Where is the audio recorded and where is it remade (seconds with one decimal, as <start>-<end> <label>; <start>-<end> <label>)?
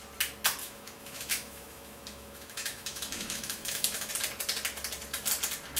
0.0-0.6 recorded; 0.6-4.1 remade; 4.1-5.8 recorded